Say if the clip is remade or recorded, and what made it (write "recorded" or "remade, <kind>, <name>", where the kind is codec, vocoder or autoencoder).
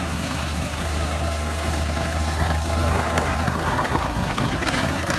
remade, codec, SNAC